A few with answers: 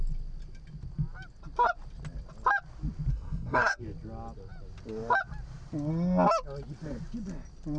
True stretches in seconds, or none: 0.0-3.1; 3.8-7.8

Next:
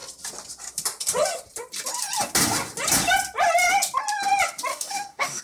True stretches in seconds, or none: 0.0-4.7